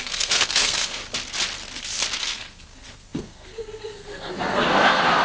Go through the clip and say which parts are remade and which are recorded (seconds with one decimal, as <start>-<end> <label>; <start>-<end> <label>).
0.0-1.0 remade; 1.0-2.2 recorded; 2.2-5.2 remade